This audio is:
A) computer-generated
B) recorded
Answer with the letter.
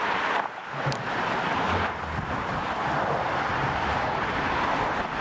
B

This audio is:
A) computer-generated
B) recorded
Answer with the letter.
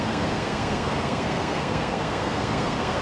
A